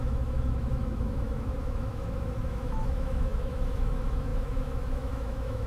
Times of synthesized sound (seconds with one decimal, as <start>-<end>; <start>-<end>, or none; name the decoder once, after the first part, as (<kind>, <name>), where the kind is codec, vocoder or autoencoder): 0.0-5.7 (autoencoder, DAC-VAE)